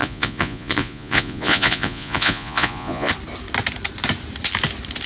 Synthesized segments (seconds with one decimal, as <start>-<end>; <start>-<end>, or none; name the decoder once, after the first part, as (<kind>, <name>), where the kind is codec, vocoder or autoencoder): 0.0-3.1 (vocoder, Vocos)